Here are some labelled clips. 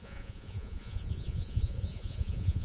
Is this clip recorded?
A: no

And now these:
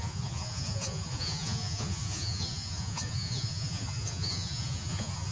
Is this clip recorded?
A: no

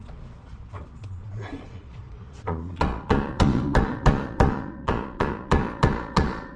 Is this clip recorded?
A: no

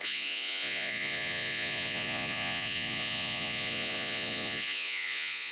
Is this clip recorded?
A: no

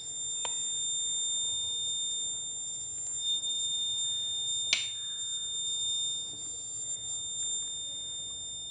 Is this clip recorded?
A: yes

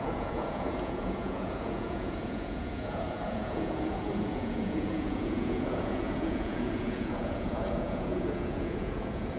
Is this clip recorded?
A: no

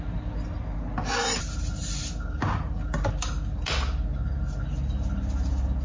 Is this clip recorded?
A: yes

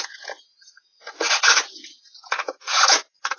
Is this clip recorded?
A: no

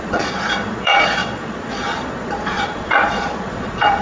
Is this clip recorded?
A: no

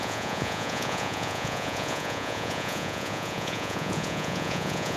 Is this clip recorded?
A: no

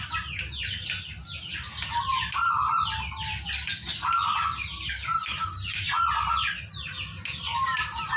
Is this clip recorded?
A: yes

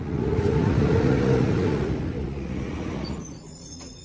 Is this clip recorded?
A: no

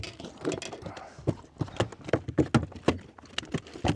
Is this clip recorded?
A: yes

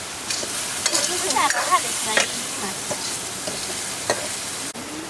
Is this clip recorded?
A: yes